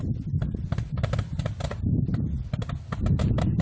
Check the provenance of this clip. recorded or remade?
recorded